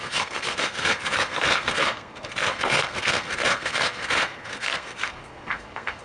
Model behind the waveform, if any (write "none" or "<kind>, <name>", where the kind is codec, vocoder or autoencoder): codec, SNAC